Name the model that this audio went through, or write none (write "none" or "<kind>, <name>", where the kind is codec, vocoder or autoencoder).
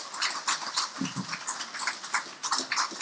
none